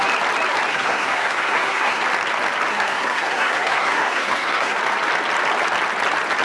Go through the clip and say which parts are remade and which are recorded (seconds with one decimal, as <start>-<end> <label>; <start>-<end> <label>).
0.0-0.7 recorded; 0.7-2.0 remade; 2.0-2.7 recorded; 2.7-4.8 remade; 4.8-6.4 recorded